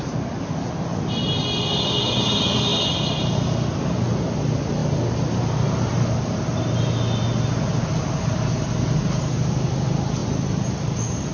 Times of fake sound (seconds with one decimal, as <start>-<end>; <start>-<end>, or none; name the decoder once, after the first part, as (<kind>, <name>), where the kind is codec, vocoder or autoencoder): none